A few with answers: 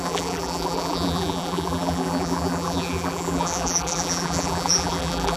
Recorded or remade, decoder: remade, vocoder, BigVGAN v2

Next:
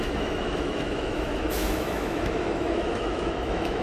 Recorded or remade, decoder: remade, autoencoder, DAC-VAE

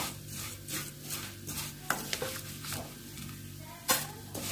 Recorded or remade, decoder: recorded